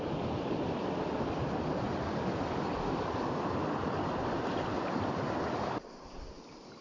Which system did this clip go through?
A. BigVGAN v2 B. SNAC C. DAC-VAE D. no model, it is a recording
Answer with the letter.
A